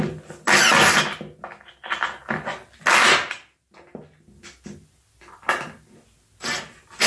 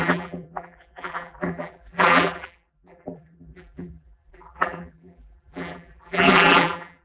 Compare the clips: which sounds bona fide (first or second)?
first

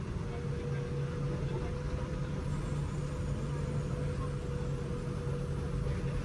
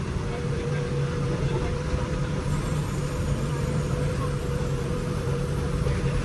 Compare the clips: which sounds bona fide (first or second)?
first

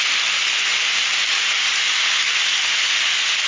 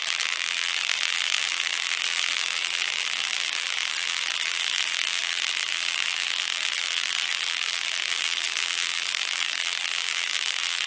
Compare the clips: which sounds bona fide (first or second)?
first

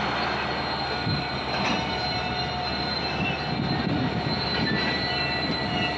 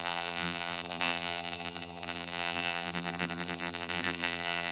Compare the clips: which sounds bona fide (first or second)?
first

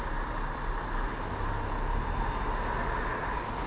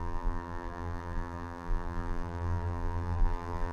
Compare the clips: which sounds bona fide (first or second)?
first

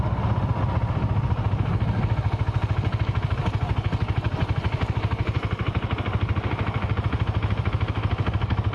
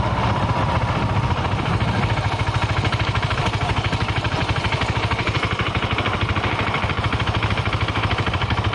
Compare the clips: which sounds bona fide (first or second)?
first